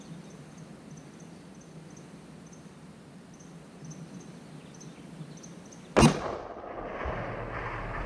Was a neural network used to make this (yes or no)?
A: no